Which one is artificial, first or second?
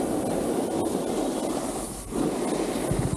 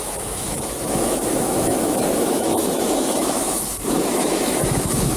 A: second